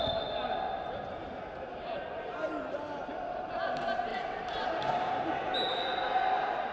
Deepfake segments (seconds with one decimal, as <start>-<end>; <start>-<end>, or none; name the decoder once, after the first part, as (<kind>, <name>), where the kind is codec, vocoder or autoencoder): 1.7-2.8 (vocoder, BigVGAN v2); 4.1-5.8